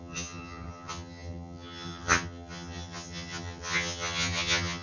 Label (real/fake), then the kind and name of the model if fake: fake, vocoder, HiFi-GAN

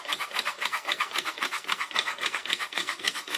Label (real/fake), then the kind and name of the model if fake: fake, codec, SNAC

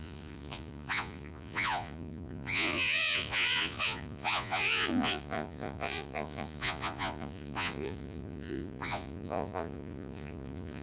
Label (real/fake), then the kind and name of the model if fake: fake, vocoder, Vocos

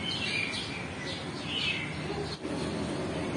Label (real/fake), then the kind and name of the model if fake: real